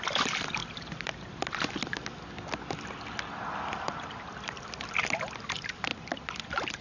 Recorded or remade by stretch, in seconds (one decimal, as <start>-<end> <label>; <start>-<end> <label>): 0.0-6.8 recorded